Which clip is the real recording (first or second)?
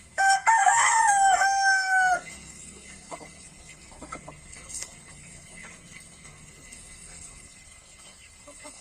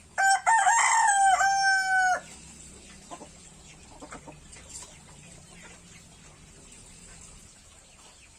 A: second